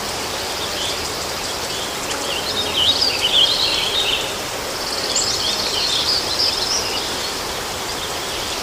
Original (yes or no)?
no